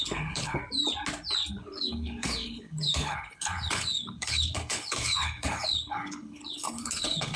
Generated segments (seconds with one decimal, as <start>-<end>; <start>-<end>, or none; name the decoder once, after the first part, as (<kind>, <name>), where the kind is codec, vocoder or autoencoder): 0.0-0.6 (codec, HILCodec); 1.5-7.4